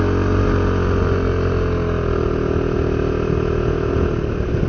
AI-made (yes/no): no